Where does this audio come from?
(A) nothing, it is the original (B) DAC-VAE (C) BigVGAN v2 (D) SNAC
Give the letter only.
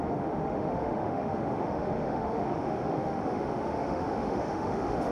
B